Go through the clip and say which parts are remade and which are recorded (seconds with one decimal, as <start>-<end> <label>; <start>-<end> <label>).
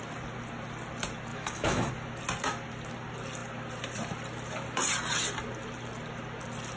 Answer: 0.0-1.3 recorded; 1.3-1.9 remade; 1.9-6.8 recorded